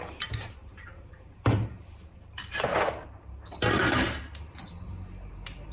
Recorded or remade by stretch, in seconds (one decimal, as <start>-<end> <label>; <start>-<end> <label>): 0.0-2.7 remade; 2.7-4.4 recorded; 4.4-5.7 remade